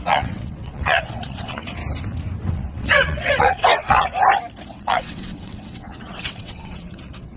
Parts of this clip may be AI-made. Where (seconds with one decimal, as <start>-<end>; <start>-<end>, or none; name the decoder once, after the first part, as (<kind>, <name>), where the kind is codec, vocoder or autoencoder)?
0.0-1.8 (vocoder, WaveNeXt); 2.5-4.1; 4.7-7.4